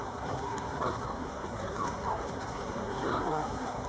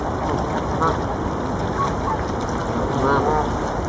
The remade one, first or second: first